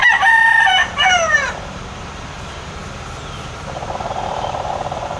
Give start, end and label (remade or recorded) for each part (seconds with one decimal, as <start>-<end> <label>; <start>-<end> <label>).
0.0-2.8 remade; 2.8-4.1 recorded; 4.1-5.2 remade